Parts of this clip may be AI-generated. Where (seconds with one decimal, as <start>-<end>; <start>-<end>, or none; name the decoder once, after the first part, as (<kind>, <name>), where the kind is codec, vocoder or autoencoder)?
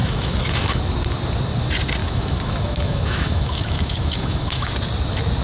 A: 0.0-0.8 (autoencoder, DAC-VAE); 2.0-4.7